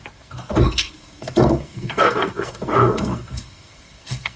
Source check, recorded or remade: remade